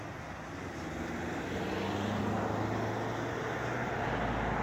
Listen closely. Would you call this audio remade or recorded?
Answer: recorded